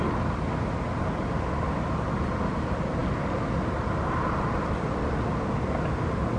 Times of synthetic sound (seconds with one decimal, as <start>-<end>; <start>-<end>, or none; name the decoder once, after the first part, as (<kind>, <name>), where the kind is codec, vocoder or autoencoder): none